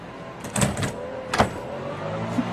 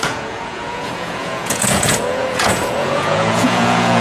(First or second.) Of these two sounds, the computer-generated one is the second